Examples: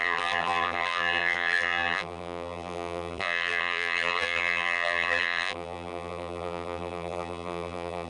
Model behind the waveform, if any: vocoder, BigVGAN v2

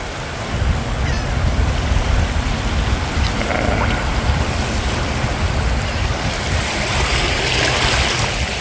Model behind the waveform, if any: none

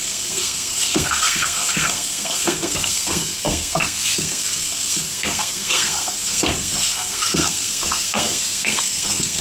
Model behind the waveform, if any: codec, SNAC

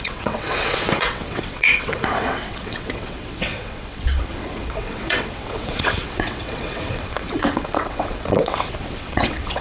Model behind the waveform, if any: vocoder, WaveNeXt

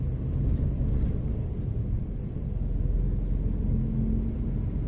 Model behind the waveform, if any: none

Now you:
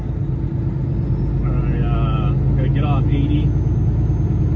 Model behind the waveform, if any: none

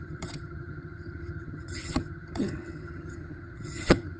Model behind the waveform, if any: vocoder, HiFi-GAN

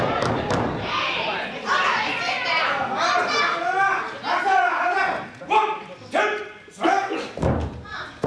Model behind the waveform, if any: none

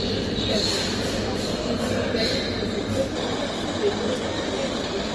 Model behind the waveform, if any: none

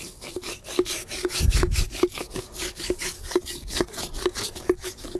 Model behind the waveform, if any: codec, DAC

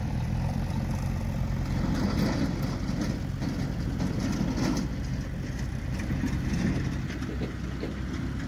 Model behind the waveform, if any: none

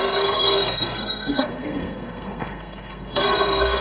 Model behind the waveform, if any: codec, SNAC